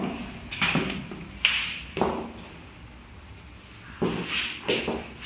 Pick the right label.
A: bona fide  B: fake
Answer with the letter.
A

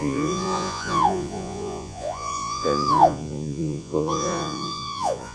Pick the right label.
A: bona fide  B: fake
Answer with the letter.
B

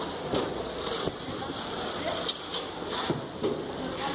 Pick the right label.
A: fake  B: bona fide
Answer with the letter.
B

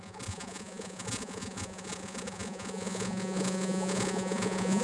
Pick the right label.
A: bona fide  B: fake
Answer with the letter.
B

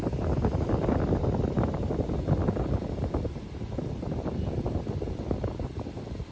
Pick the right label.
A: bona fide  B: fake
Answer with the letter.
A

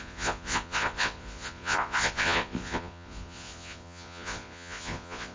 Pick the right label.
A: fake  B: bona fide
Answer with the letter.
A